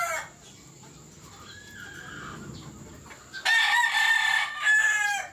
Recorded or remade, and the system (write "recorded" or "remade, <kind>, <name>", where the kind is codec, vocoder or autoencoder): recorded